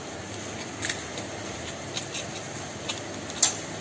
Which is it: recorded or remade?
recorded